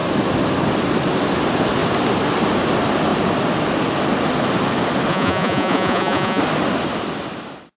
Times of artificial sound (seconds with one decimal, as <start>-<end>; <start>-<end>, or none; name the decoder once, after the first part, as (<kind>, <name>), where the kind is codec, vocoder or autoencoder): 5.1-6.4 (vocoder, Vocos)